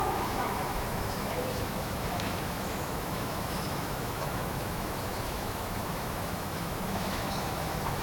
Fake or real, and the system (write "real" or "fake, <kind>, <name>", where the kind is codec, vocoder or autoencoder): fake, autoencoder, DAC-VAE